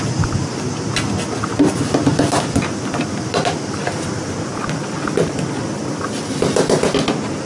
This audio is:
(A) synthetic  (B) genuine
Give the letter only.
B